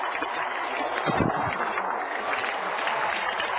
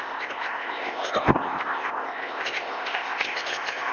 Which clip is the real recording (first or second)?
first